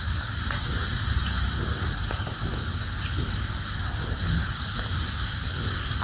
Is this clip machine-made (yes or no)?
no